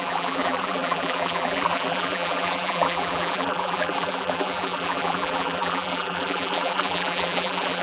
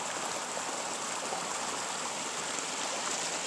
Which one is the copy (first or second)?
first